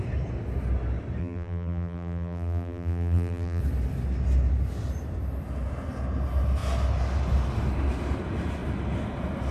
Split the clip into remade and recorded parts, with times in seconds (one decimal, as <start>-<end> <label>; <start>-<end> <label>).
0.0-1.2 recorded; 1.2-3.6 remade; 3.6-9.5 recorded